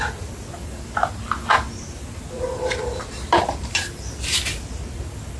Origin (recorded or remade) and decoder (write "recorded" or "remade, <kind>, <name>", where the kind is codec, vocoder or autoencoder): recorded